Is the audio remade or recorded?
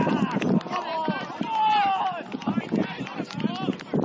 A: recorded